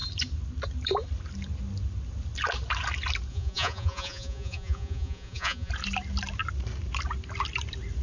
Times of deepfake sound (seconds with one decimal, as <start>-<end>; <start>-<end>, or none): 3.3-5.7